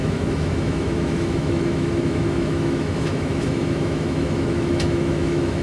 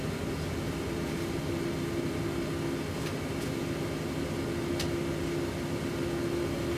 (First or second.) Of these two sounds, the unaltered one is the second